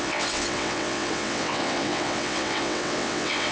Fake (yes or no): yes